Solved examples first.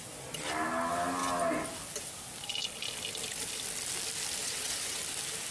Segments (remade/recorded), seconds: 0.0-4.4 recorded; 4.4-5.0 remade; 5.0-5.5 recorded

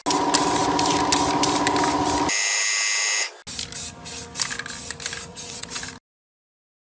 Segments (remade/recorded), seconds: 0.0-5.3 recorded; 5.3-5.8 remade; 5.8-6.8 recorded